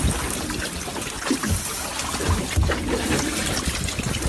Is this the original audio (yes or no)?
yes